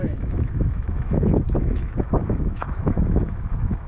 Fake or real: fake